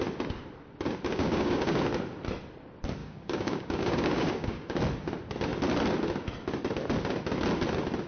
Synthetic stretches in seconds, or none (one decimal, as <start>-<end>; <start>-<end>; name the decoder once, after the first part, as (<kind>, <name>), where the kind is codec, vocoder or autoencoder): 1.1-1.8 (codec, DAC); 3.0-4.8